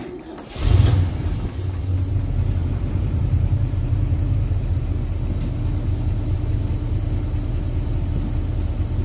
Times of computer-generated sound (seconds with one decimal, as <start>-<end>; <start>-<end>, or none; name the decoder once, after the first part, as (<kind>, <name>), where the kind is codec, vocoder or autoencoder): 2.7-4.8 (vocoder, BigVGAN v2)